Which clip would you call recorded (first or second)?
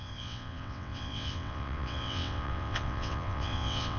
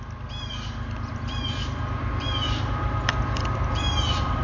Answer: second